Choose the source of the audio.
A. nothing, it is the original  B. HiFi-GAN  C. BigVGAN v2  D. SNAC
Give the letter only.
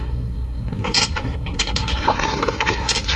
D